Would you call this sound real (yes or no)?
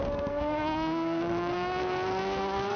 no